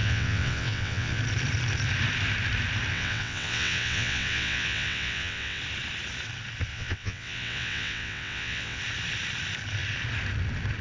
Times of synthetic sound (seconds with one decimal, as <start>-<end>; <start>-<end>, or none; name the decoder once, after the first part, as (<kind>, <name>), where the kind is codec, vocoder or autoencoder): 0.0-1.2 (vocoder, WaveNeXt); 2.9-5.6; 6.7-8.8